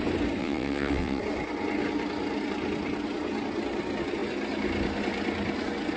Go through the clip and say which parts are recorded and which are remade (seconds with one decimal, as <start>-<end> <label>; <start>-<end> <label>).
0.0-0.4 recorded; 0.4-1.2 remade; 1.2-6.0 recorded